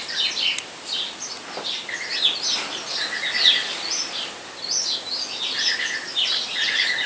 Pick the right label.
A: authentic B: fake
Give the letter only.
A